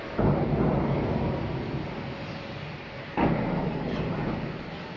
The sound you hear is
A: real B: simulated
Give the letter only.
A